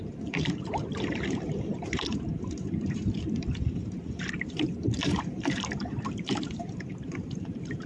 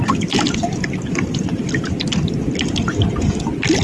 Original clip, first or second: second